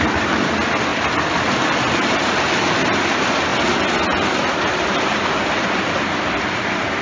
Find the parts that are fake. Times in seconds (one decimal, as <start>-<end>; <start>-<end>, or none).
none